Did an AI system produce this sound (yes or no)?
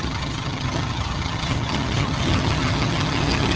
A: yes